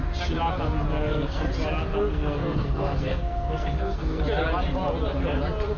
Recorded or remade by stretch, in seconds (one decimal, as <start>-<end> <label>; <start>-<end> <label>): 0.0-1.0 recorded; 1.0-1.5 remade; 1.5-2.0 recorded; 2.0-4.2 remade; 4.2-5.8 recorded